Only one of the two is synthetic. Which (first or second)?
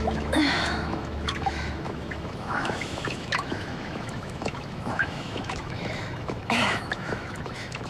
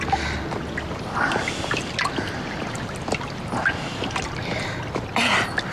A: first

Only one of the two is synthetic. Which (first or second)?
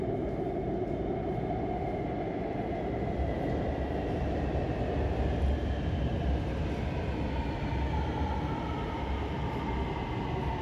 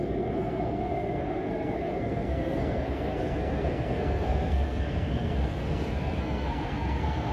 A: second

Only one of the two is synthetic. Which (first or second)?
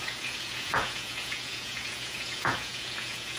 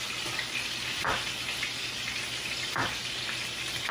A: first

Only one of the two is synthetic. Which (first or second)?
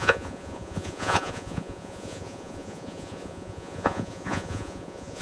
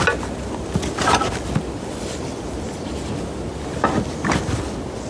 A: first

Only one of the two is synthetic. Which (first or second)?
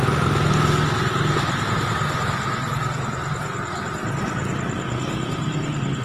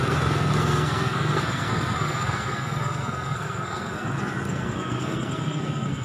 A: second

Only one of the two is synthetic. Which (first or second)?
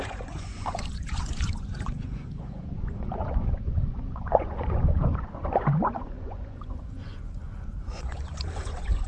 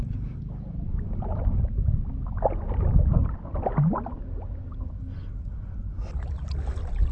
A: first